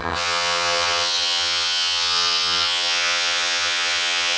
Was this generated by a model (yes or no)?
yes